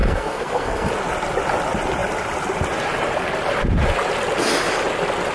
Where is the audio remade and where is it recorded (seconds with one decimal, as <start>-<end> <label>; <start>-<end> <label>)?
0.0-0.9 remade; 0.9-5.3 recorded